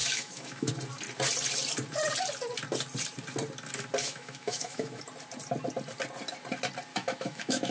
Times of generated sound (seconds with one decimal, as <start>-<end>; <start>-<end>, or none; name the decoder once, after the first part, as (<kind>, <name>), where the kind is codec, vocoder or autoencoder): 0.0-0.7 (autoencoder, DAC-VAE); 4.0-5.0; 6.9-7.7